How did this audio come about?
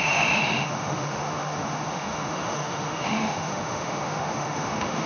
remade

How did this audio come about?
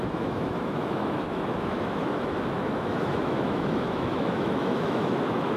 remade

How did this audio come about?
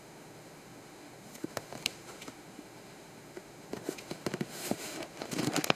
remade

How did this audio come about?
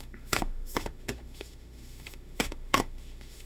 remade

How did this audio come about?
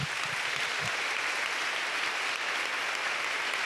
recorded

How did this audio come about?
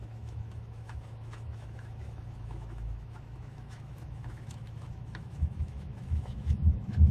remade